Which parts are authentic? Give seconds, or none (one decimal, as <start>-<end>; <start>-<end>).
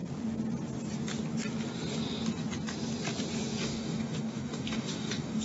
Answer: 0.0-3.6